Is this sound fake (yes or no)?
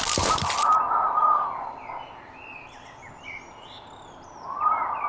no